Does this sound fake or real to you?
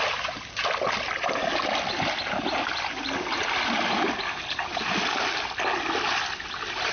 real